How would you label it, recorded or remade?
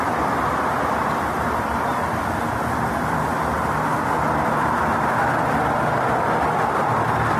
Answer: remade